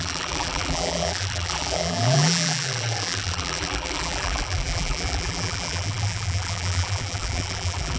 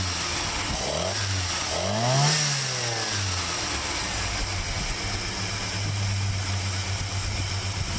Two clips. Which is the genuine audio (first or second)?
second